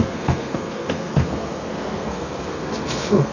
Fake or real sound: fake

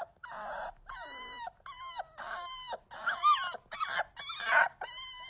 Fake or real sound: real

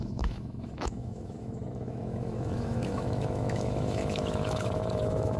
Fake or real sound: fake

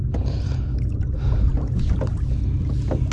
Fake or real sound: real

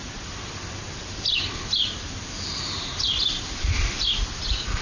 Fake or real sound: real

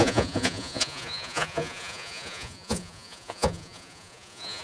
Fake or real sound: fake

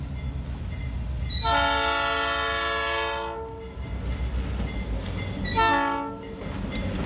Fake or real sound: real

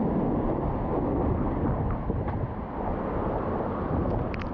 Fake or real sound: real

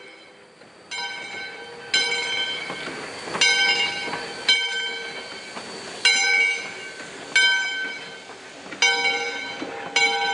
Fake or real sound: real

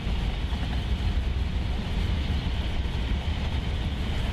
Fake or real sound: real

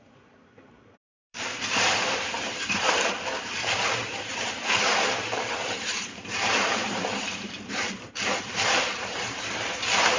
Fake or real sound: fake